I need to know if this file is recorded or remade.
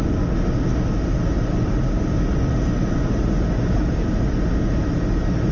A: recorded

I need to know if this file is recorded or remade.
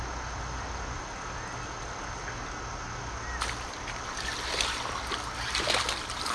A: recorded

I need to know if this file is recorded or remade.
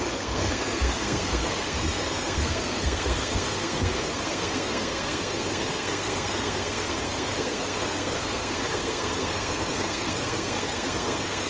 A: remade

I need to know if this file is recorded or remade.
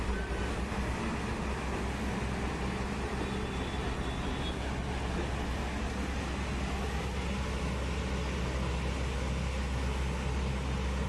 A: recorded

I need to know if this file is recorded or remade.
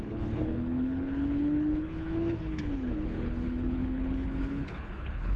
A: remade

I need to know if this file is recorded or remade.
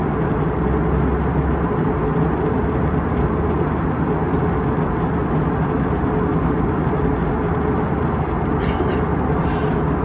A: recorded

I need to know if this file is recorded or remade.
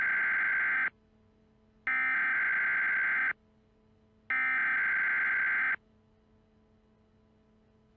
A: recorded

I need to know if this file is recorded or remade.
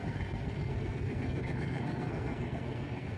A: remade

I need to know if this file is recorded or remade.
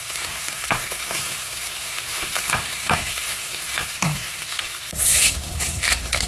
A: remade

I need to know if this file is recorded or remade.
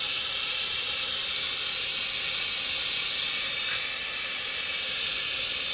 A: recorded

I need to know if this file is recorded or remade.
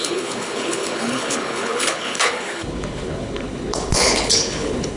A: remade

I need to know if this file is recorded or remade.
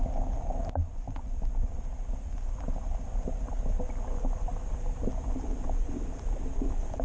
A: recorded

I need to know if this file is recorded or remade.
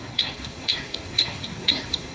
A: remade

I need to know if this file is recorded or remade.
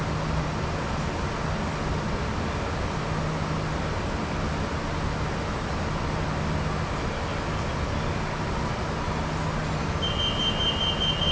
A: recorded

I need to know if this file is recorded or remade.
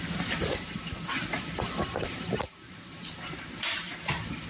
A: remade